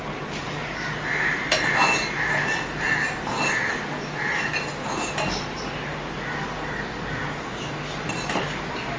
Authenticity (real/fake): real